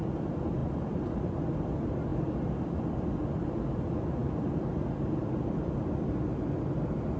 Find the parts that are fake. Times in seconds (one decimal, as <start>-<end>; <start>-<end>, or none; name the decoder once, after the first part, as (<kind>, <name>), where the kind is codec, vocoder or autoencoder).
0.6-1.3 (vocoder, BigVGAN v2)